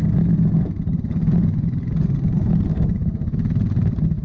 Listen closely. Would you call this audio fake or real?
real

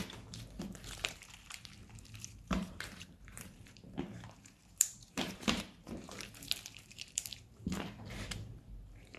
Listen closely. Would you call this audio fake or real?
fake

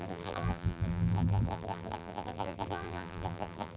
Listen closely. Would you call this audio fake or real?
fake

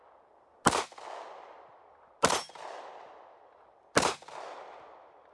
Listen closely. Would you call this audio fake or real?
real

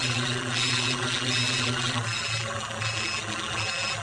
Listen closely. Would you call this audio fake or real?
fake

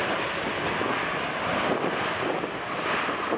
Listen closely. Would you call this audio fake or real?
real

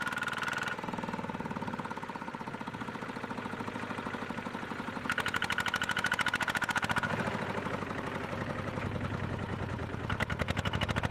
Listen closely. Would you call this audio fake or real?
real